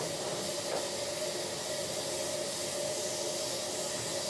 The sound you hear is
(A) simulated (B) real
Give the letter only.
B